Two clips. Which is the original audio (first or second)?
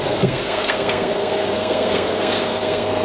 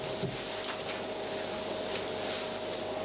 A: second